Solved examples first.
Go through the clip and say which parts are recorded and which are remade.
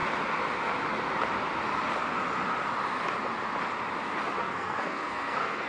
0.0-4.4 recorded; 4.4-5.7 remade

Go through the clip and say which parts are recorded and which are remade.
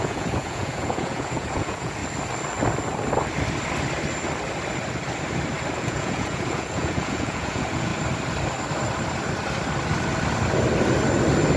0.0-2.0 remade; 2.0-5.8 recorded; 5.8-7.9 remade; 7.9-11.6 recorded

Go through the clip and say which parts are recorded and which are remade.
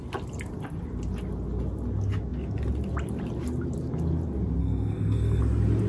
0.0-4.6 recorded; 4.6-5.4 remade; 5.4-5.9 recorded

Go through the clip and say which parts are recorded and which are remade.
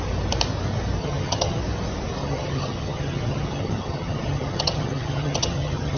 0.0-1.0 recorded; 1.0-1.6 remade; 1.6-2.2 recorded; 2.2-6.0 remade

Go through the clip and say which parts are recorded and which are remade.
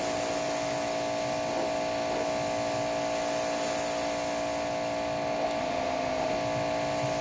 0.0-5.6 recorded; 5.6-6.3 remade; 6.3-7.2 recorded